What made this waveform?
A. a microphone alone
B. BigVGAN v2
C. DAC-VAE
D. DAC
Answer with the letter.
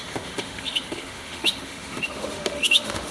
C